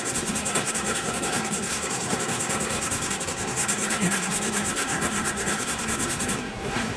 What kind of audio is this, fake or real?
fake